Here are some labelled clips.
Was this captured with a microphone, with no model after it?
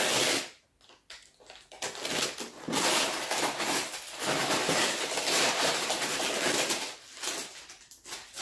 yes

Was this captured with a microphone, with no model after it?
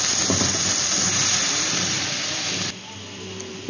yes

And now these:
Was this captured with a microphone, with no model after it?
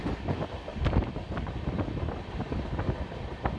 no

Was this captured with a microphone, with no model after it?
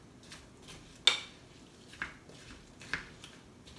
yes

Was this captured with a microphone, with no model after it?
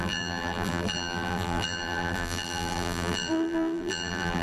no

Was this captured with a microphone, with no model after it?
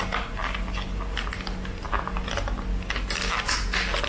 yes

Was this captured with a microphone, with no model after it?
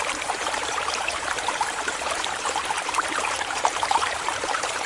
no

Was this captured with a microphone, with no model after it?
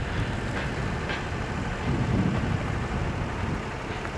yes